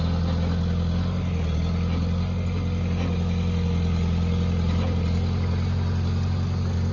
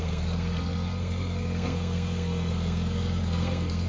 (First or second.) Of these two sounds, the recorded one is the first